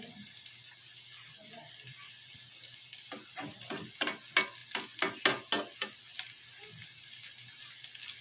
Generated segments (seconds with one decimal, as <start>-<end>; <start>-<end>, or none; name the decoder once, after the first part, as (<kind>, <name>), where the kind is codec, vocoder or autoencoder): none